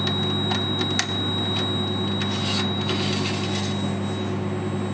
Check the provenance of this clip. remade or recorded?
recorded